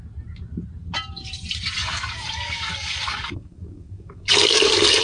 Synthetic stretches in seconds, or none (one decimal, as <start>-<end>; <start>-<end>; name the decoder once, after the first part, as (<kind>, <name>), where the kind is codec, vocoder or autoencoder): 1.8-5.0 (codec, DAC)